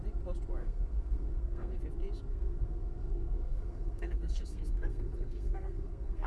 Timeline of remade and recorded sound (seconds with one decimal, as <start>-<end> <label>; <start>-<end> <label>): 0.0-0.6 recorded; 0.6-1.8 remade; 1.8-2.3 recorded; 2.3-6.3 remade